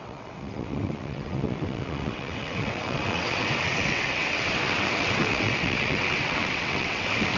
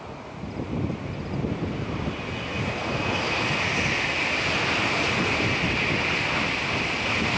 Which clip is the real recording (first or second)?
second